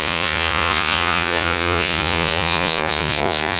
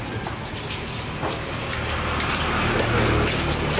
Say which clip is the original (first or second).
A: second